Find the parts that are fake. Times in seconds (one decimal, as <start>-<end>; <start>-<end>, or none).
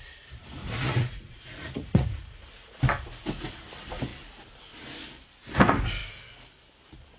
0.6-2.8